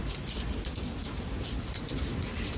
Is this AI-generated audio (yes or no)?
no